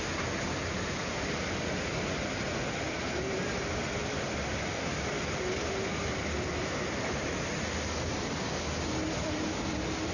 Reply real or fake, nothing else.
real